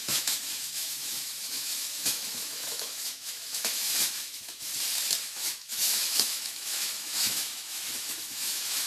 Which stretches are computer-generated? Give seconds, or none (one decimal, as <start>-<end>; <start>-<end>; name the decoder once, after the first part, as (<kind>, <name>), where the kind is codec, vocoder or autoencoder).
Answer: 0.0-4.7 (autoencoder, DAC-VAE); 5.2-8.9